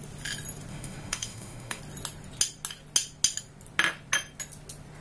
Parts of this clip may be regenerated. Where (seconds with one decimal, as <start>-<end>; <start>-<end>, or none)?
0.7-1.8